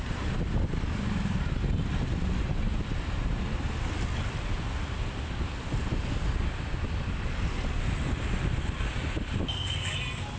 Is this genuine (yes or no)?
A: yes